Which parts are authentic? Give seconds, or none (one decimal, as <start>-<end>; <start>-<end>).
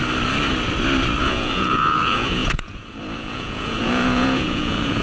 0.0-1.2